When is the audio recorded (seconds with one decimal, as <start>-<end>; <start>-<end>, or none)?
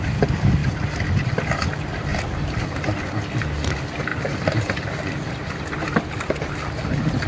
0.0-0.6; 1.3-2.1; 3.0-7.3